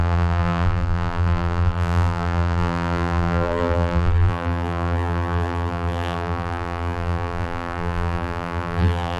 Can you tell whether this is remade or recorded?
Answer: remade